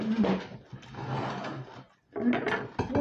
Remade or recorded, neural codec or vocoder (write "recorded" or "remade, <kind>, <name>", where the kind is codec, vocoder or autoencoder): recorded